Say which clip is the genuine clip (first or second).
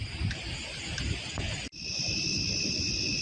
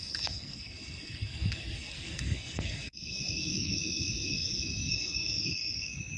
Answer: first